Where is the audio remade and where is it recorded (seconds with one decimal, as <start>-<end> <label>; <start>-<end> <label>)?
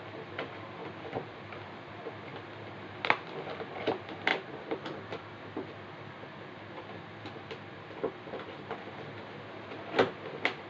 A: 0.0-10.7 recorded